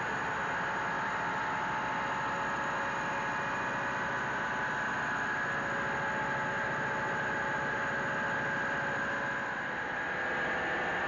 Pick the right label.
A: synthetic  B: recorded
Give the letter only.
B